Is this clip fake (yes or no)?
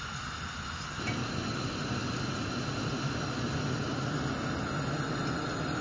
no